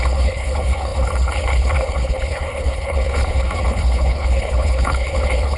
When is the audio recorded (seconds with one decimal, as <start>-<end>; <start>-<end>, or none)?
none